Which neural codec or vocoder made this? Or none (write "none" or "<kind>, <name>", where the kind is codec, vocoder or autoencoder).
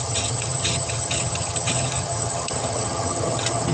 vocoder, HiFi-GAN